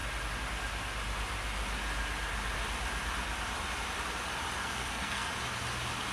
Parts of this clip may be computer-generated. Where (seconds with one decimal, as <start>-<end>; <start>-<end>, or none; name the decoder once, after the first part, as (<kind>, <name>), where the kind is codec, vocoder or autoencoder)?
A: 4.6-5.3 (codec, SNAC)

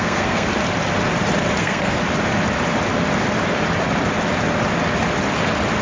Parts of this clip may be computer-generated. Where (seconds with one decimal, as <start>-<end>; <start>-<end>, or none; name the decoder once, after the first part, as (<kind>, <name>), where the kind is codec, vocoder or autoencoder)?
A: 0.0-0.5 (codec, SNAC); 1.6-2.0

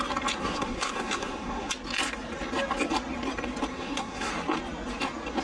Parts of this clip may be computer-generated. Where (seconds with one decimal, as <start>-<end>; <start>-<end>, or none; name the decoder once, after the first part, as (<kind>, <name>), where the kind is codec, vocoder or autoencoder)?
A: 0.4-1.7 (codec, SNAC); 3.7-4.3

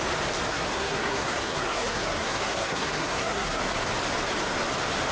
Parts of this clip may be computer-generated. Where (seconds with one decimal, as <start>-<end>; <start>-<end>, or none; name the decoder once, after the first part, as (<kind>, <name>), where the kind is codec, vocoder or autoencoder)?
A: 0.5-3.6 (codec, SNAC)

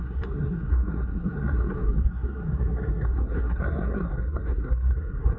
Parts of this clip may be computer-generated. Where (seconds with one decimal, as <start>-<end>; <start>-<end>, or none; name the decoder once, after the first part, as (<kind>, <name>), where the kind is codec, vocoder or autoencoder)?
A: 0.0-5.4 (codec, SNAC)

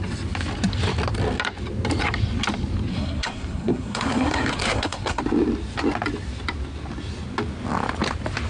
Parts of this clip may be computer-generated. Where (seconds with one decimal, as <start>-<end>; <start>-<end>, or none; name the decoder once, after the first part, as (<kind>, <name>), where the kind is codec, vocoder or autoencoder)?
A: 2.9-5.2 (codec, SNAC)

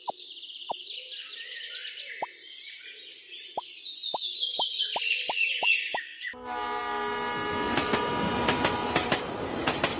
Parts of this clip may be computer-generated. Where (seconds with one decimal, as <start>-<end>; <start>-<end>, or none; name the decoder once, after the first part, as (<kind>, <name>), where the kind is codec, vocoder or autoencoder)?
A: none